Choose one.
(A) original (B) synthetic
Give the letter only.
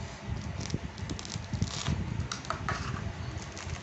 A